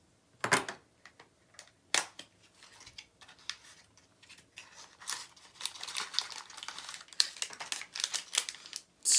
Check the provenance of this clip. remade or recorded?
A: recorded